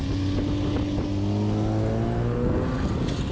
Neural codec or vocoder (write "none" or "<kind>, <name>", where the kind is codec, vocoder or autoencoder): none